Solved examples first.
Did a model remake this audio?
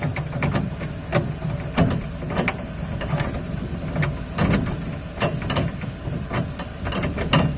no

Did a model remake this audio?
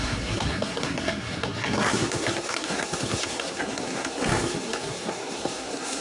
yes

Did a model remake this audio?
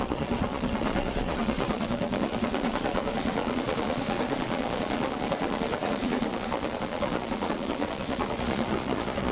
yes